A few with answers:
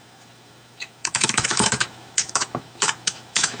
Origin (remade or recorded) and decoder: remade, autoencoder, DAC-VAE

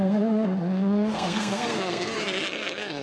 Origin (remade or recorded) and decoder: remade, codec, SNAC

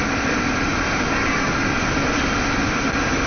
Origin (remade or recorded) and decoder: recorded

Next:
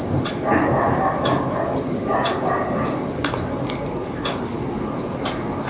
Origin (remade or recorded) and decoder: recorded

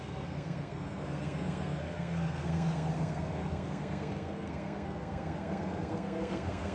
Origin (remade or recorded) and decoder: remade, codec, SNAC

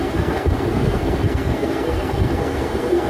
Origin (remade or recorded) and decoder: remade, codec, SNAC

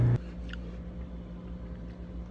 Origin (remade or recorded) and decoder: recorded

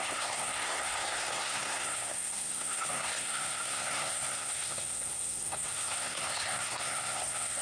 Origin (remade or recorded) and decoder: remade, codec, SNAC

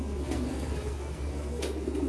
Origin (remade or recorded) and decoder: remade, codec, SNAC